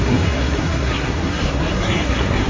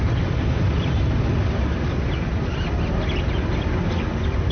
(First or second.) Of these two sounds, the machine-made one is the first